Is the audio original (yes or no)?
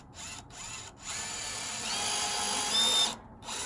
yes